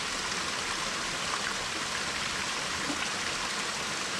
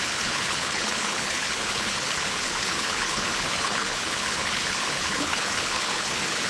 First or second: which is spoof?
second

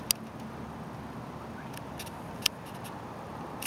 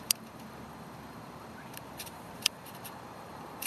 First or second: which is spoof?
second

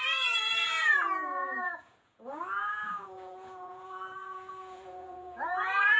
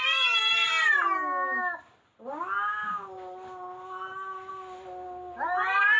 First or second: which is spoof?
first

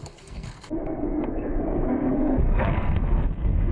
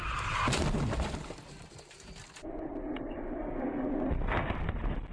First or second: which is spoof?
first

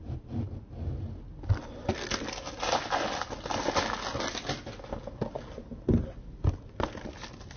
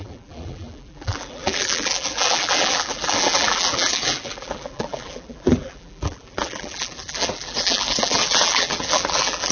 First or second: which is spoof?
second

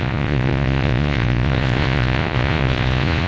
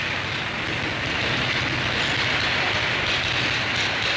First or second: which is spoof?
first